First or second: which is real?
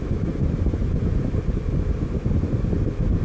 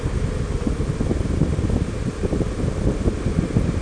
second